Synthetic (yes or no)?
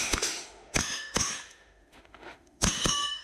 yes